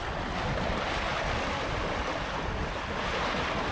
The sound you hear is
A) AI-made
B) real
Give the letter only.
B